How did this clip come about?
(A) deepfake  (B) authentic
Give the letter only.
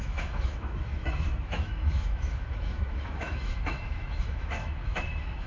A